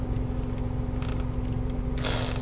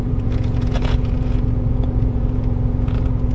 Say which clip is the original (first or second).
first